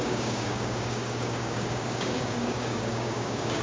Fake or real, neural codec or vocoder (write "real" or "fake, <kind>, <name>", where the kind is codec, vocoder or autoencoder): fake, codec, DAC